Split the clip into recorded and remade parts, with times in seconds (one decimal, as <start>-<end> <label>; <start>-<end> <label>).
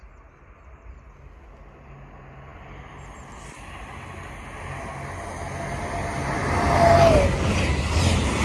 0.0-8.4 recorded